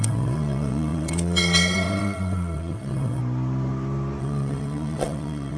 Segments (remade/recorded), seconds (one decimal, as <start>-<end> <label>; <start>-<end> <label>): 0.0-3.2 remade; 3.2-4.2 recorded; 4.2-5.6 remade